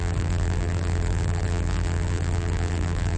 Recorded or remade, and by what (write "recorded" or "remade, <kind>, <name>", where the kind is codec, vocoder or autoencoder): remade, vocoder, BigVGAN v2